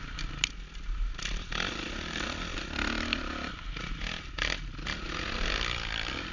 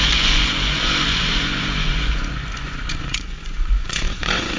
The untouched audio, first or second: first